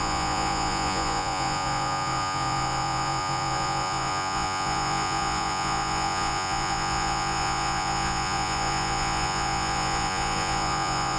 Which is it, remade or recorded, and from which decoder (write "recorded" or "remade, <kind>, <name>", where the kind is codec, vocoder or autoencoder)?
remade, vocoder, Vocos